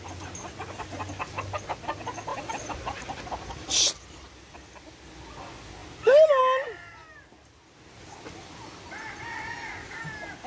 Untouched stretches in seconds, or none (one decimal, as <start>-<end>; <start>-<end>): 0.0-2.3; 5.0-10.5